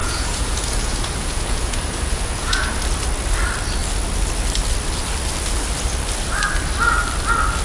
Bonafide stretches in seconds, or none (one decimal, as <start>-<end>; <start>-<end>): 2.8-7.6

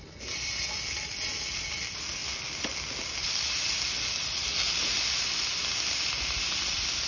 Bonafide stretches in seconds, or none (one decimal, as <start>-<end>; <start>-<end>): 0.0-7.1

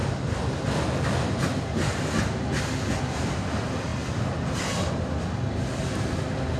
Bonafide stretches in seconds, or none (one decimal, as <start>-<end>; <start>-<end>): 0.0-6.6

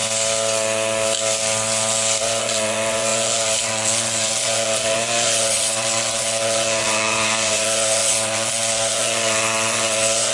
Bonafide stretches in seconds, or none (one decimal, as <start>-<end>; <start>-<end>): 0.0-2.2

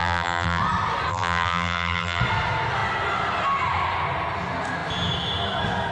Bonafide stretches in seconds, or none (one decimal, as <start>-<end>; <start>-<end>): 0.6-1.1; 2.2-5.9

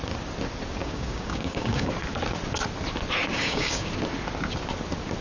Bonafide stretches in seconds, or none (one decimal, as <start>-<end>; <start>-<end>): 0.0-0.8; 1.9-3.3; 3.9-5.2

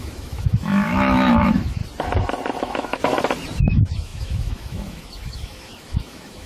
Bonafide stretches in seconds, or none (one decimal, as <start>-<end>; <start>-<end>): 1.8-2.6; 3.0-3.6

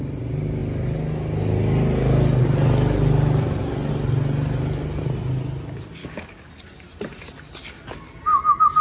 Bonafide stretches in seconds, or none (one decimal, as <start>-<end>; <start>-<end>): 0.0-6.0; 6.5-8.8